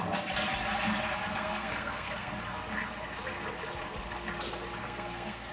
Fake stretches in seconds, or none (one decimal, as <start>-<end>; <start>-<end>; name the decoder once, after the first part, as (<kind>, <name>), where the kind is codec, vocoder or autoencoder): 1.2-2.3 (codec, SNAC); 4.8-5.5